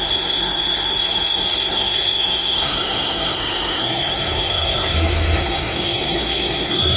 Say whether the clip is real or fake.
fake